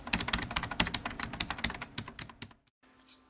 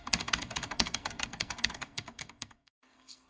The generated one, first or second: second